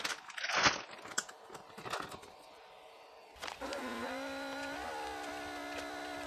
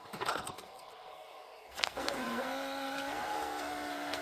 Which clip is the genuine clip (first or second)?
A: first